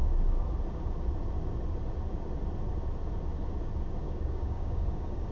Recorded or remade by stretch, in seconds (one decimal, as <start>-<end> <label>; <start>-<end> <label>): 0.0-4.0 recorded; 4.0-5.3 remade